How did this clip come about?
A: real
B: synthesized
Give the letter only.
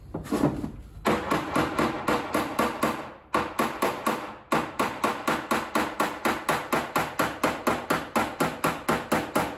A